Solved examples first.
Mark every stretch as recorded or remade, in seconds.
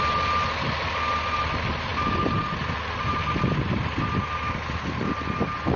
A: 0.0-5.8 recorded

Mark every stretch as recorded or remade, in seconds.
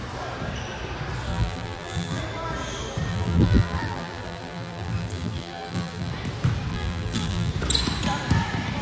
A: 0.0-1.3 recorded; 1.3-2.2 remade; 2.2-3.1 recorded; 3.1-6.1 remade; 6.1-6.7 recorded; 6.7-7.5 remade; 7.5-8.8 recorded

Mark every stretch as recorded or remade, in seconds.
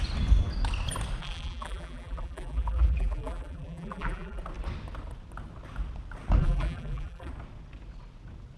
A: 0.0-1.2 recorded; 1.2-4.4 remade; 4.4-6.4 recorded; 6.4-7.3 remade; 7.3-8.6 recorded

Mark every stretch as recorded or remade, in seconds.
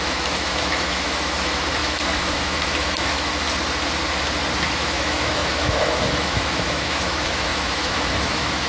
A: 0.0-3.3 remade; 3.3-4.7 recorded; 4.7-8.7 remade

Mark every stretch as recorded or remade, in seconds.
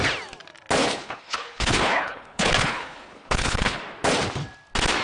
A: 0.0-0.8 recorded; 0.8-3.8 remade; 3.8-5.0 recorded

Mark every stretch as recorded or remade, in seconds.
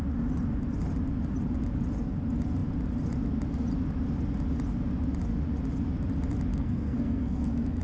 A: 0.0-6.5 recorded; 6.5-7.8 remade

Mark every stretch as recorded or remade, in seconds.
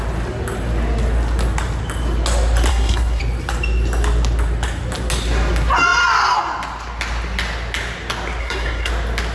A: 0.0-2.7 recorded; 2.7-3.2 remade; 3.2-8.4 recorded; 8.4-8.9 remade; 8.9-9.3 recorded